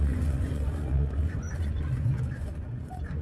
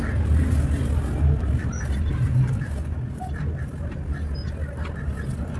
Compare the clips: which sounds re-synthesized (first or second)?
first